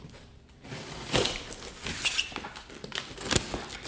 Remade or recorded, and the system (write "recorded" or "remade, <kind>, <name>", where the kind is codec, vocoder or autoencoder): recorded